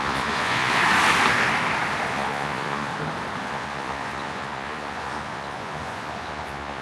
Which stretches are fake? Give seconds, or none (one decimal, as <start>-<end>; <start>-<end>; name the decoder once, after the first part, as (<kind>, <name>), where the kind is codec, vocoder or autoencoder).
0.0-0.8 (vocoder, Vocos); 2.1-2.9; 3.4-6.8